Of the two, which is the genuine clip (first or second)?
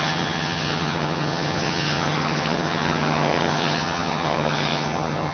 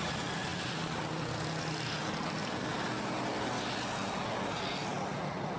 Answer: second